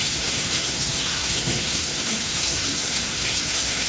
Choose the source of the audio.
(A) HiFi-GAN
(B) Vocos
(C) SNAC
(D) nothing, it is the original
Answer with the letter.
C